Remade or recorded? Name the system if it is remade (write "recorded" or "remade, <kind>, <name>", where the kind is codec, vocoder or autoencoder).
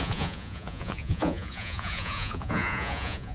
remade, vocoder, Vocos